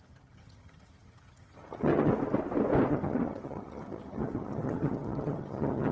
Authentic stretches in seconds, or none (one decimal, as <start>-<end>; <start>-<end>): 2.1-2.9